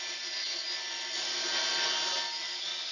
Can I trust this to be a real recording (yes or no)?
yes